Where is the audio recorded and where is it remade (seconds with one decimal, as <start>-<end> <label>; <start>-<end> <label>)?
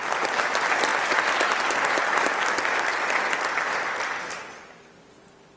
0.0-5.6 recorded